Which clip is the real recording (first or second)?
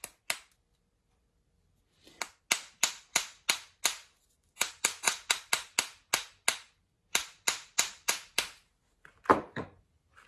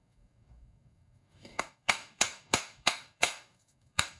first